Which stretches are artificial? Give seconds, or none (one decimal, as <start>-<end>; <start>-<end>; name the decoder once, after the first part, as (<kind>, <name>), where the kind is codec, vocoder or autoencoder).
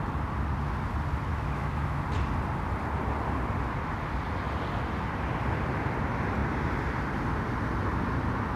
1.3-2.0 (autoencoder, DAC-VAE)